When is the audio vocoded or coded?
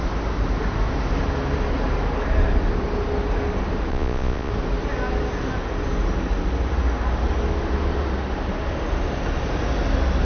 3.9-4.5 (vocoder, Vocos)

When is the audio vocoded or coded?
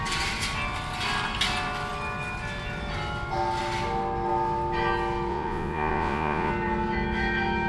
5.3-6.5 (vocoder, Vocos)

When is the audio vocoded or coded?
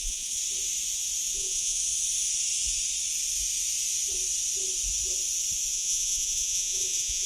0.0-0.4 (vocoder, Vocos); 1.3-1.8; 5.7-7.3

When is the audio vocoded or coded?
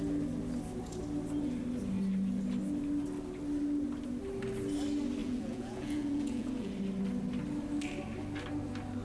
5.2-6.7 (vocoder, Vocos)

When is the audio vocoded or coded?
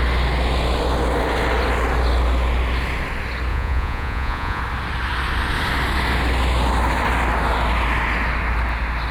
3.5-4.6 (vocoder, Vocos)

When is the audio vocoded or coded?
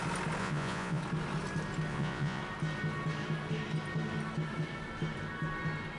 0.4-1.0 (vocoder, Vocos); 1.9-2.4